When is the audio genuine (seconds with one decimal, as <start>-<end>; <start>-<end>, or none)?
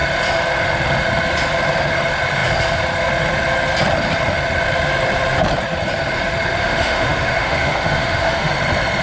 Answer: 0.0-6.6; 8.5-9.0